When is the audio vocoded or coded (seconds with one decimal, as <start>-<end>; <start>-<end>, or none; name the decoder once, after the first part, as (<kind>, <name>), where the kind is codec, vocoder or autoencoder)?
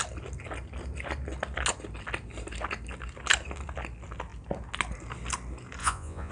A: 5.8-6.3 (vocoder, Vocos)